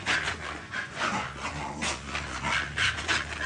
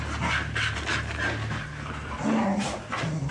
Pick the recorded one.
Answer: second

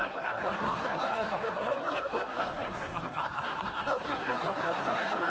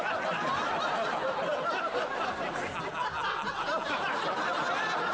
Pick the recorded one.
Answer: second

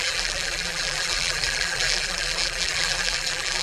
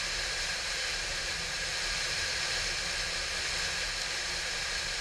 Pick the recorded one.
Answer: second